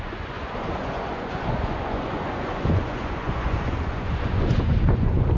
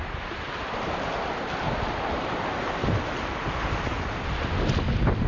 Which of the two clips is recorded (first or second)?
second